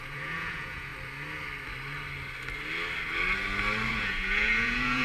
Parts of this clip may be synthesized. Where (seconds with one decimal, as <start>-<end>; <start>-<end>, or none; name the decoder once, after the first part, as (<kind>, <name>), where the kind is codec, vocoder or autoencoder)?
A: 0.0-0.9 (vocoder, Vocos); 3.9-5.0